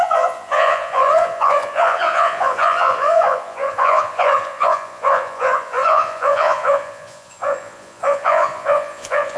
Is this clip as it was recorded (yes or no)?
no